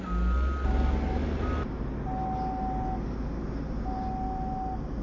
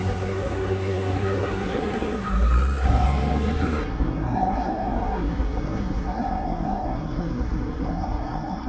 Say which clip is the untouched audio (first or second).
first